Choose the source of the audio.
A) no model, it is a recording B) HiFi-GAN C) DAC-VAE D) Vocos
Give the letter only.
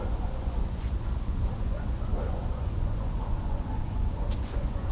D